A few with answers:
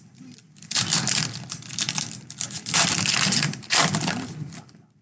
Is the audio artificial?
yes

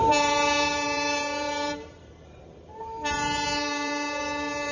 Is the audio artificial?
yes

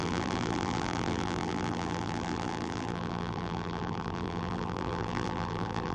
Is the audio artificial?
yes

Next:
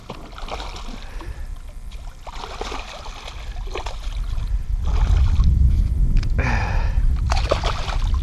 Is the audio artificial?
no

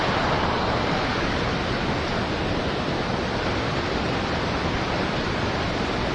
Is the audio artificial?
no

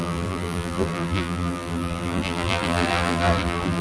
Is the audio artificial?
yes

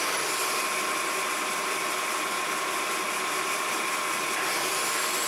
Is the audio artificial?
yes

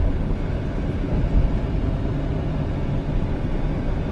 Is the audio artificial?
no